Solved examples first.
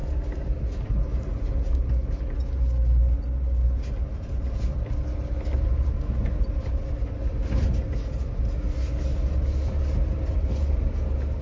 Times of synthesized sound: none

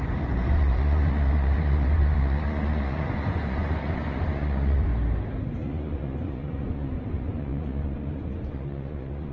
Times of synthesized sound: 0.0-4.9 (vocoder, Vocos); 5.6-9.3

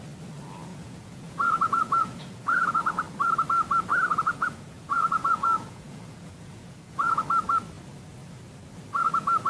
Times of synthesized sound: 0.7-3.0 (vocoder, Vocos); 4.1-7.2

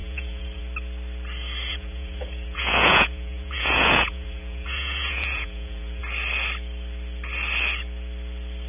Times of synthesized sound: 0.0-0.6 (vocoder, Vocos); 1.7-6.0